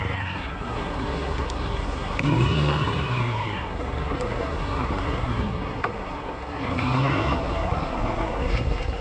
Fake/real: fake